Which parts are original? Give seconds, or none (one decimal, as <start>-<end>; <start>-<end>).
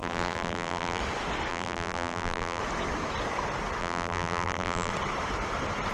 1.0-1.5; 2.6-3.8; 4.9-5.9